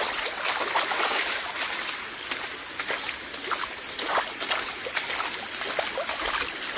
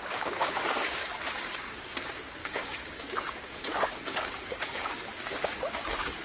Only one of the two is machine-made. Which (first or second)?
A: second